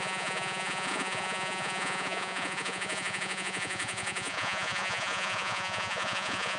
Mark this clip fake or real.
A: fake